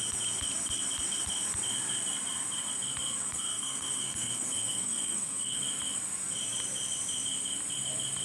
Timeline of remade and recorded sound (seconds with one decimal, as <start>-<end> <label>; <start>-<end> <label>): 0.0-3.2 recorded; 3.2-5.6 remade; 5.6-8.2 recorded